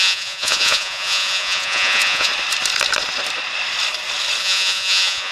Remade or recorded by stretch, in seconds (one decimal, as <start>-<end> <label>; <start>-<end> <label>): 0.0-2.3 remade; 2.3-4.4 recorded; 4.4-5.3 remade